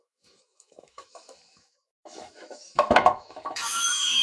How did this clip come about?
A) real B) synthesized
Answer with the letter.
B